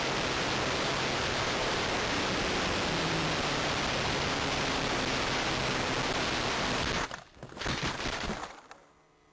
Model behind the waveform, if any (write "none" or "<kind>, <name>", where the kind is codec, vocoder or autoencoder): none